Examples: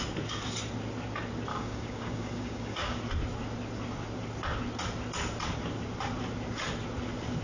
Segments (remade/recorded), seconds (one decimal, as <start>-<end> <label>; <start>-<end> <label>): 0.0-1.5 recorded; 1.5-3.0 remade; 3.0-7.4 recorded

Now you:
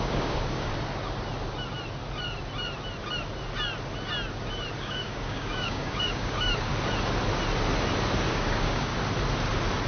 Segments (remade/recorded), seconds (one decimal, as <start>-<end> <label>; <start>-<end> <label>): 0.0-0.7 remade; 0.7-4.8 recorded; 4.8-6.7 remade; 6.7-8.3 recorded; 8.3-8.9 remade; 8.9-9.9 recorded

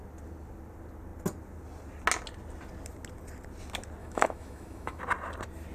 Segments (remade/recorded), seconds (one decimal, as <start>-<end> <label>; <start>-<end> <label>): 0.0-4.0 recorded; 4.0-5.0 remade; 5.0-5.7 recorded

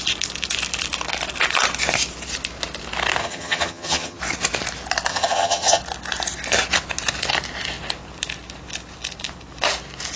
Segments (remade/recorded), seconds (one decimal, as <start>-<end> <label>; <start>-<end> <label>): 0.0-3.2 recorded; 3.2-4.2 remade; 4.2-5.1 recorded; 5.1-5.8 remade; 5.8-10.2 recorded

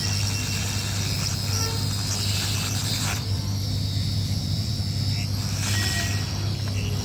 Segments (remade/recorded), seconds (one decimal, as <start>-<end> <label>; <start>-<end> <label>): 0.0-2.8 recorded; 2.8-4.8 remade; 4.8-7.0 recorded

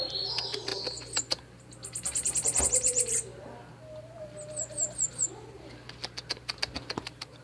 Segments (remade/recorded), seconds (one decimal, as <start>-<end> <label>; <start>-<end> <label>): 0.0-3.3 remade; 3.3-7.0 recorded; 7.0-7.4 remade